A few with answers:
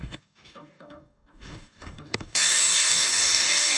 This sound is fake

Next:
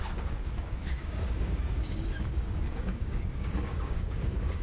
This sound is fake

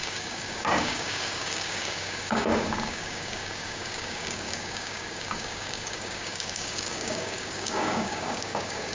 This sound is fake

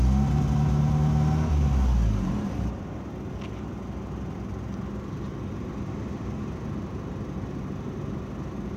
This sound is real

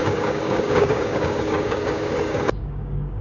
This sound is fake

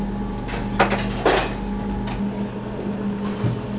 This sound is real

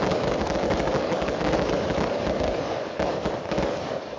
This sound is fake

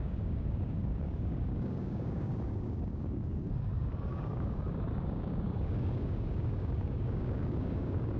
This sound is fake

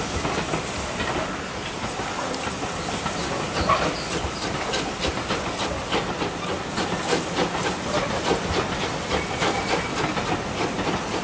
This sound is real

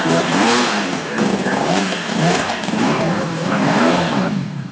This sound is fake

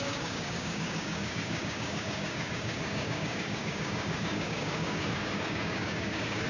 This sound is fake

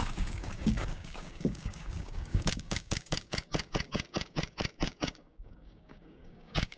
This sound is fake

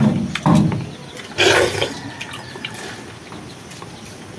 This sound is real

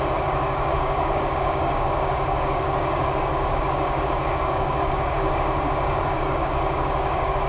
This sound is fake